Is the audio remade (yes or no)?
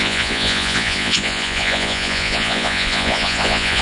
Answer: yes